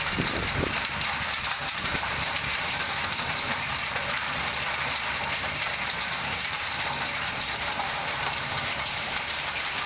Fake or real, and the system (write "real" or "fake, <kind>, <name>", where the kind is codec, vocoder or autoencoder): fake, vocoder, BigVGAN v2